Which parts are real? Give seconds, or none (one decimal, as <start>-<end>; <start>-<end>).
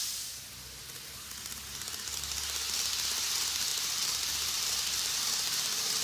0.0-3.7; 5.1-6.0